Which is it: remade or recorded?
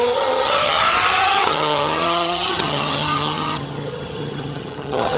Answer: remade